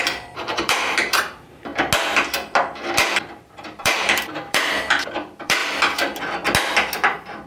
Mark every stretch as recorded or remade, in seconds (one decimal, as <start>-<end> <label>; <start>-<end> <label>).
0.0-1.7 remade; 1.7-3.2 recorded; 3.2-5.6 remade; 5.6-7.5 recorded